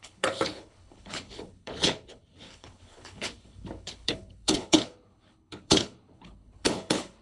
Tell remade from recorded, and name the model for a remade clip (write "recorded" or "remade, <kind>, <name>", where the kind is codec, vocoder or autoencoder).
remade, codec, HILCodec